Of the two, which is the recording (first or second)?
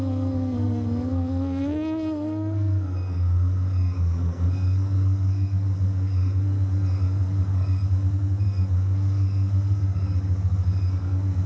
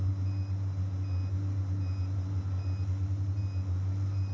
second